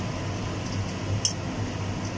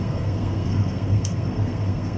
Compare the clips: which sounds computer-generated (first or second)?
second